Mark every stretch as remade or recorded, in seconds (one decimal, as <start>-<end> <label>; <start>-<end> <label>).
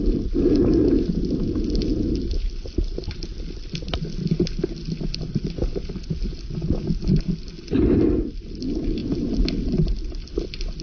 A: 0.0-10.8 recorded